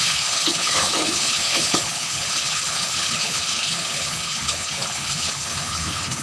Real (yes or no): no